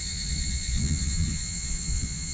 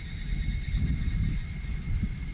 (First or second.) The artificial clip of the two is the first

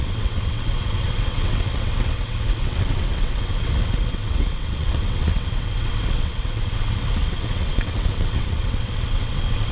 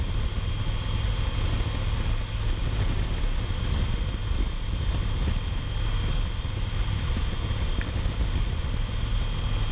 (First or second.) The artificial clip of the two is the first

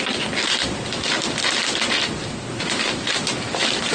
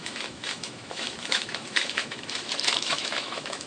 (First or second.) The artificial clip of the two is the second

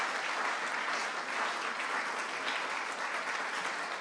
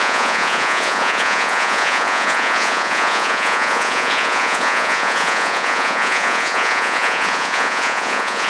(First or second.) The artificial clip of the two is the second